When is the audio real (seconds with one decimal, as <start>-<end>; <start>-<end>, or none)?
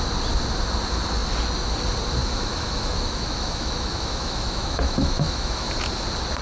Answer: 0.0-2.2; 5.7-6.4